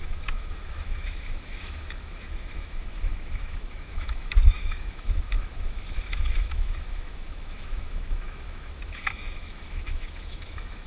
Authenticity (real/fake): fake